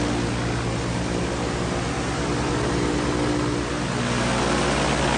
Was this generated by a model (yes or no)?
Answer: no